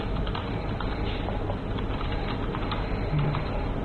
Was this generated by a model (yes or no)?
no